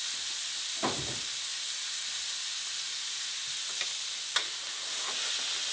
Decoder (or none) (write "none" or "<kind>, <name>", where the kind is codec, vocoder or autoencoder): none